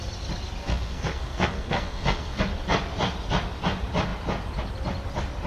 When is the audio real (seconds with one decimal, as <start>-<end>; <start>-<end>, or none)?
0.0-0.6; 2.4-5.5